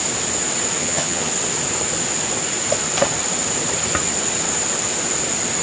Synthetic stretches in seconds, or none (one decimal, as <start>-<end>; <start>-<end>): 0.8-1.3